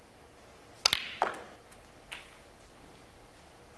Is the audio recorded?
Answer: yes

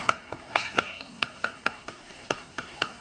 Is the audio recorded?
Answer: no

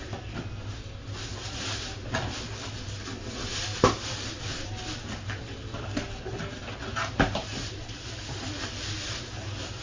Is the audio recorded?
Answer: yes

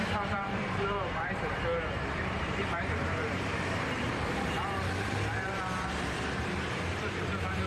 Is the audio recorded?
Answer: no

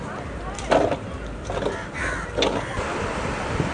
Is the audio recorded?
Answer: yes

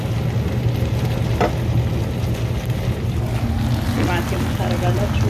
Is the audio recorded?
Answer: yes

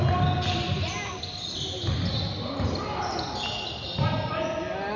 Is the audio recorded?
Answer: yes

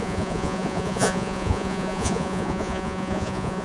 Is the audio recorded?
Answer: no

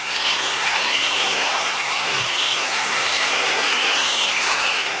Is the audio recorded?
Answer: no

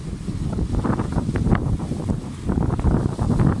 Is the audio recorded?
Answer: yes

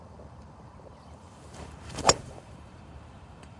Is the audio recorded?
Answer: no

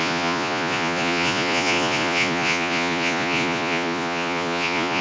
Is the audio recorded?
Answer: no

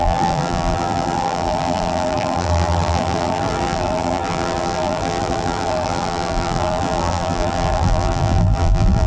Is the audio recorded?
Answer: no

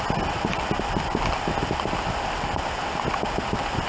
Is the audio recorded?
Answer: yes